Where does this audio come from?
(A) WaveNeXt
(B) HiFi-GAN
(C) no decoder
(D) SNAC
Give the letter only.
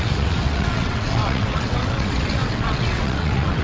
A